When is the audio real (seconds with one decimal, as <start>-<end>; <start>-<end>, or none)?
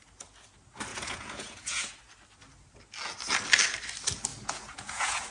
0.0-0.9; 1.9-4.3